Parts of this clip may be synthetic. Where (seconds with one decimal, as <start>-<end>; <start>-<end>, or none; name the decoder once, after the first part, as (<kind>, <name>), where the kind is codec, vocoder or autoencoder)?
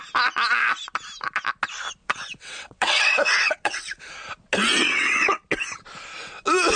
2.0-4.1 (vocoder, WaveNeXt); 4.8-5.4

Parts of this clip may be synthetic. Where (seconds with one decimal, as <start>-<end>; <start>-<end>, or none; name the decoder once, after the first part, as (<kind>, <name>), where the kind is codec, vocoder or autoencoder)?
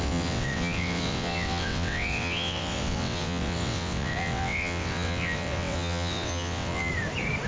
0.0-6.9 (vocoder, WaveNeXt)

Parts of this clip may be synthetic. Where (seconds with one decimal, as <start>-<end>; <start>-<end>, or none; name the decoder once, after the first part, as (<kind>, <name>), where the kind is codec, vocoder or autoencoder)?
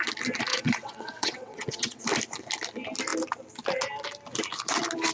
0.5-2.0 (vocoder, WaveNeXt)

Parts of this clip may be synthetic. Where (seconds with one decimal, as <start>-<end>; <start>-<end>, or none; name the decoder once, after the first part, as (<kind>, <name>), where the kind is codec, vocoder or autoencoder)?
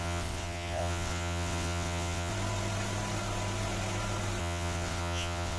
0.0-2.3 (vocoder, WaveNeXt); 4.4-5.6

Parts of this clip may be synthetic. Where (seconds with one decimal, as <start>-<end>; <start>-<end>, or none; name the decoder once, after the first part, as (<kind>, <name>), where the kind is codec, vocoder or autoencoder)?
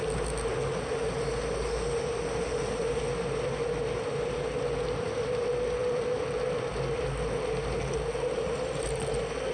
none